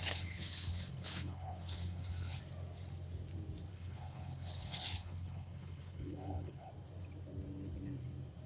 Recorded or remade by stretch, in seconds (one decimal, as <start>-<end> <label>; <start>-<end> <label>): 0.0-2.4 remade; 2.4-3.7 recorded; 3.7-6.7 remade; 6.7-8.5 recorded